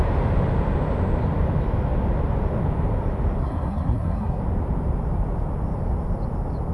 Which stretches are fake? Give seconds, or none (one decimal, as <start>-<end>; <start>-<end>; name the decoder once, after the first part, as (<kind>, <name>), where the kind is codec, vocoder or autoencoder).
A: 3.4-4.4 (codec, SNAC)